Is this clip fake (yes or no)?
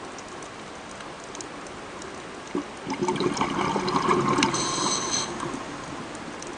no